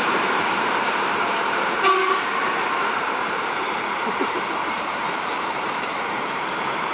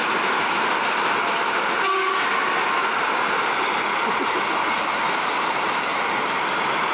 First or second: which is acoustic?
second